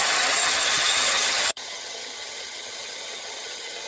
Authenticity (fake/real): fake